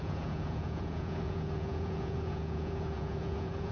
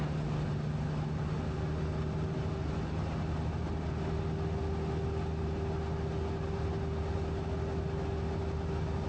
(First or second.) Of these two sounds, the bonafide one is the second